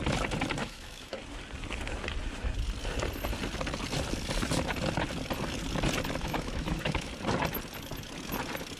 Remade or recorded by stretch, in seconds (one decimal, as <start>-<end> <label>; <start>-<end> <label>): 0.0-0.6 recorded; 0.6-1.2 remade; 1.2-6.2 recorded; 6.2-7.1 remade; 7.1-8.8 recorded